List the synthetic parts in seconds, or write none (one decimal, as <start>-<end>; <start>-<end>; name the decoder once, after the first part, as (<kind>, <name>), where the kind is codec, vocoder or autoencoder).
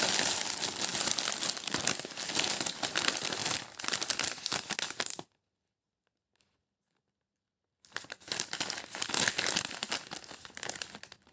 0.9-1.5 (vocoder, BigVGAN v2)